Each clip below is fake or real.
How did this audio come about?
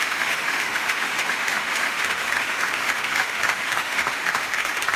fake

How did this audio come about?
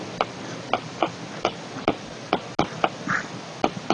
real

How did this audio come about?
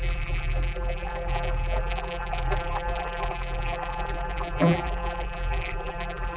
fake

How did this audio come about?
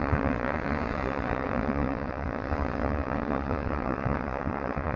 fake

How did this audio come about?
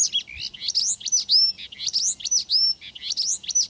real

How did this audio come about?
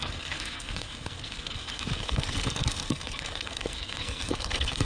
fake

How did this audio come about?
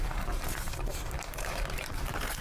fake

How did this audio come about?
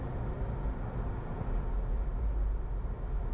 real